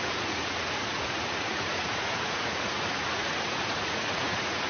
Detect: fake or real fake